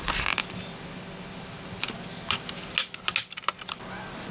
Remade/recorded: recorded